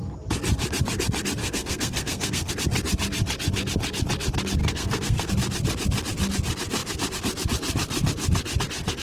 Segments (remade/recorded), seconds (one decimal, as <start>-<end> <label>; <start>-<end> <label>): 0.0-1.4 recorded; 1.4-2.5 remade; 2.5-4.6 recorded; 4.6-5.3 remade; 5.3-9.0 recorded